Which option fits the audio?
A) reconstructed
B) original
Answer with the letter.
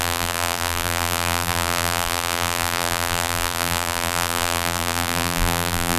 A